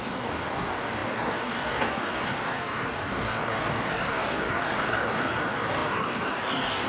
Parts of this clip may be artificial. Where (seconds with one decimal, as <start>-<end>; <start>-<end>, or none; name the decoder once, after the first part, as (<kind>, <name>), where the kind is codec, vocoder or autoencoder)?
0.0-6.9 (codec, DAC)